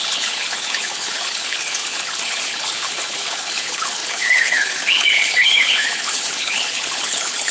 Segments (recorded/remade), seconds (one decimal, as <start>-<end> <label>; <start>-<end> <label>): 0.0-7.5 remade